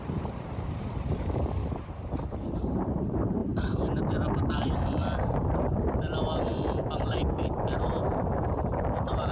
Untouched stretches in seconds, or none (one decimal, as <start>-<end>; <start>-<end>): none